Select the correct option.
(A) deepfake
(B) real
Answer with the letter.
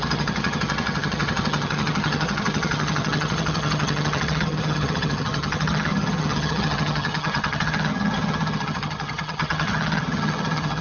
A